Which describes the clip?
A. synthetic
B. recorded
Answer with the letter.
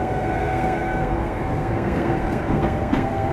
A